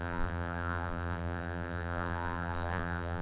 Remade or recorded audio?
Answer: remade